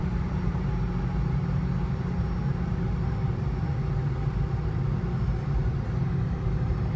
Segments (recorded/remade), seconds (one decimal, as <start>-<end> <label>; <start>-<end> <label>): 0.0-0.7 remade; 0.7-7.0 recorded

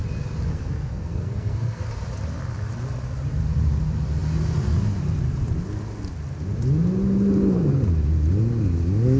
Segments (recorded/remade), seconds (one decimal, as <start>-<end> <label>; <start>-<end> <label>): 0.0-0.5 recorded; 0.5-1.9 remade; 1.9-9.2 recorded

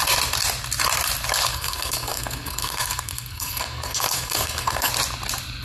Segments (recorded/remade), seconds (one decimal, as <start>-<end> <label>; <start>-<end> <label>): 0.0-1.5 recorded; 1.5-4.9 remade; 4.9-5.6 recorded

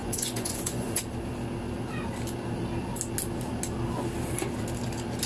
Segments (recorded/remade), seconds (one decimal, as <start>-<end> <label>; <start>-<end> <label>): 0.0-1.0 remade; 1.0-5.3 recorded

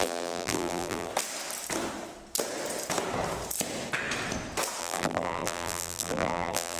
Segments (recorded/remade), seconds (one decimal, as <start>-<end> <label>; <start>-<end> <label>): 0.0-1.1 remade; 1.1-4.8 recorded; 4.8-6.8 remade